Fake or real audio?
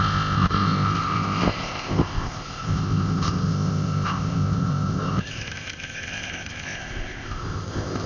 fake